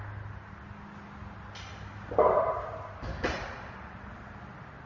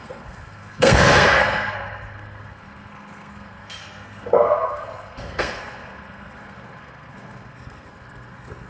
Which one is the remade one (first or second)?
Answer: second